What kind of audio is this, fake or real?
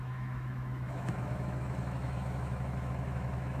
fake